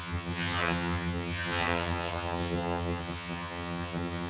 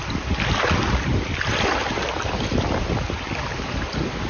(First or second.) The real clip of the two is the second